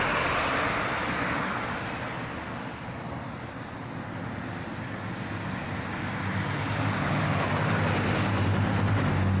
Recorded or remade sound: recorded